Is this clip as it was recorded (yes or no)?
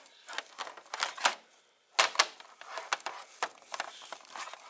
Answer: yes